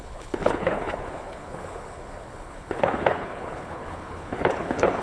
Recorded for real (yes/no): no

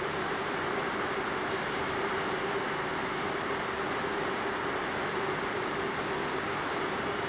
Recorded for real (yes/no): yes